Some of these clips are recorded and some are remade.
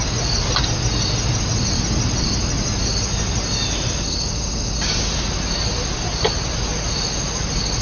recorded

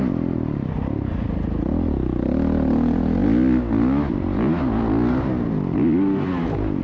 recorded